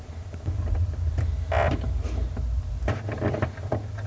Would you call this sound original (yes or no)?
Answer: yes